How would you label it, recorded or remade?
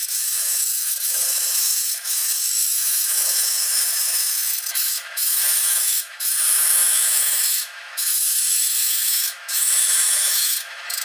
remade